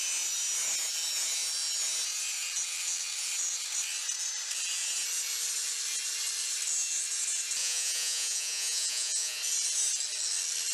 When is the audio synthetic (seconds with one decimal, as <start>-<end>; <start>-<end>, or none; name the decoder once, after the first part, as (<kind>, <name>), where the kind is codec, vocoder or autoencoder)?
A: 7.6-9.4 (vocoder, Vocos)